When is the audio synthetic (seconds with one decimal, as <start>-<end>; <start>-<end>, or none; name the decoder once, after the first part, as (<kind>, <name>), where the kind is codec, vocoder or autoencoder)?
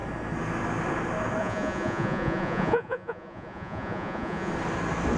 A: 1.4-4.5 (vocoder, Vocos)